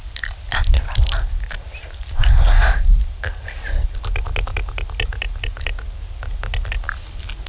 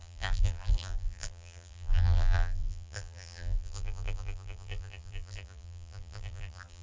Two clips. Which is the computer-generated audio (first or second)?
second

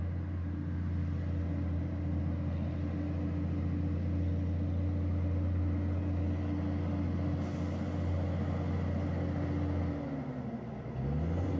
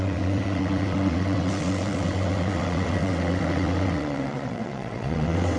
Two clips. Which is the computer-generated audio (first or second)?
second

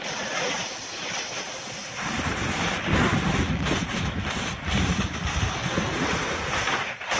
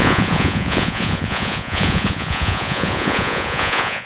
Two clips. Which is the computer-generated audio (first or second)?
second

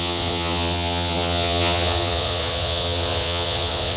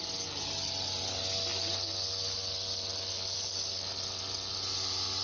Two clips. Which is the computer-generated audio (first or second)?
first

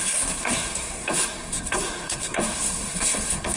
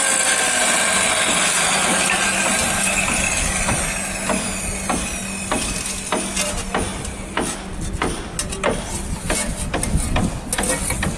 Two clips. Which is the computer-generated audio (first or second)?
first